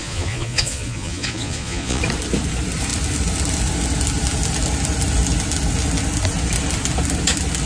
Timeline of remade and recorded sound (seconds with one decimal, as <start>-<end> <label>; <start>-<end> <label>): 0.0-2.0 remade; 2.0-7.7 recorded